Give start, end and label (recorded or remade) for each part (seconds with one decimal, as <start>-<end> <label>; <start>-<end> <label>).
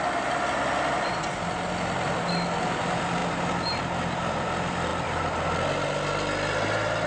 0.0-7.1 recorded